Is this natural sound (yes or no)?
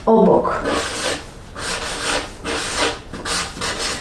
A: yes